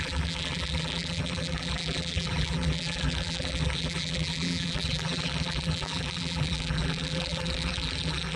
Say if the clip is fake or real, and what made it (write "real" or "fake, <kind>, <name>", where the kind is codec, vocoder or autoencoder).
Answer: fake, vocoder, BigVGAN v2